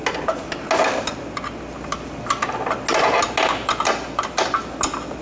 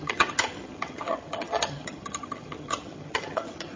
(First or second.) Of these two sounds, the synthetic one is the second